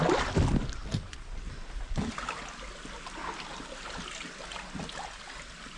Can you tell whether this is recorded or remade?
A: recorded